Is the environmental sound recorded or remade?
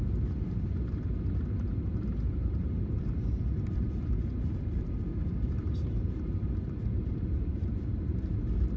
remade